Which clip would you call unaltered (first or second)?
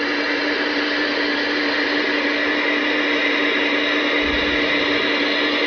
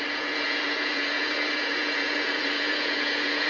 first